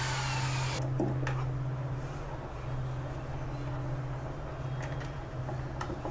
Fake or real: real